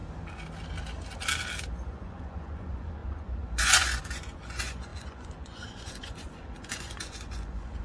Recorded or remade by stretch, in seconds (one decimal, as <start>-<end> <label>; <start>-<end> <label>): 0.0-1.7 recorded; 1.7-7.8 remade